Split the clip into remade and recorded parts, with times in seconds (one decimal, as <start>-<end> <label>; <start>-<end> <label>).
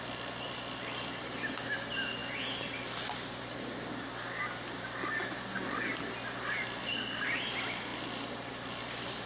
0.0-9.3 recorded